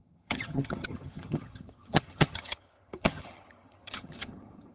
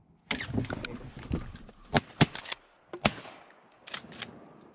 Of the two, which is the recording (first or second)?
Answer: second